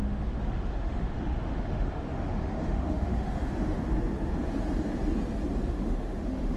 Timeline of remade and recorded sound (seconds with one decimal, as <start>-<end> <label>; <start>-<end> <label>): 0.0-3.7 remade; 3.7-5.7 recorded; 5.7-6.6 remade

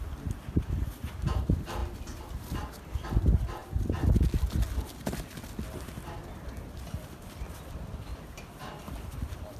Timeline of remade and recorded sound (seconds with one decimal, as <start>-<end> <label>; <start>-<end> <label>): 0.0-9.6 recorded

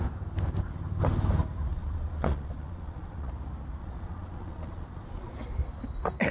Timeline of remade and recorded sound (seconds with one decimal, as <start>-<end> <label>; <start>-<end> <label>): 0.0-1.7 recorded; 1.7-3.3 remade; 3.3-3.8 recorded; 3.8-5.3 remade; 5.3-6.3 recorded

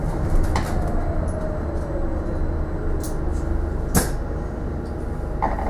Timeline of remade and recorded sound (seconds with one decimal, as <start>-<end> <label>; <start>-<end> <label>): 0.0-5.7 recorded

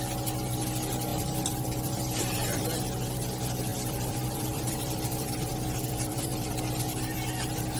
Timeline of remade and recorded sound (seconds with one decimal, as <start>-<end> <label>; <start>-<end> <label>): 0.0-1.1 recorded; 1.1-2.8 remade; 2.8-3.7 recorded; 3.7-6.7 remade; 6.7-7.8 recorded

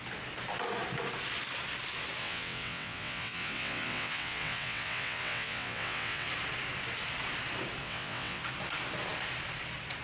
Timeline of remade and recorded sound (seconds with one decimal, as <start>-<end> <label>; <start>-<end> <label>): 0.0-2.2 recorded; 2.2-6.3 remade; 6.3-7.8 recorded; 7.8-8.4 remade; 8.4-10.0 recorded

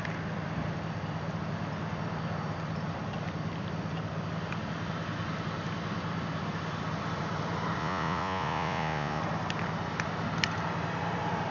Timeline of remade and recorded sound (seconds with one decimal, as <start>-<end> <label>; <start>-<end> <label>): 0.0-7.8 recorded; 7.8-9.2 remade; 9.2-11.5 recorded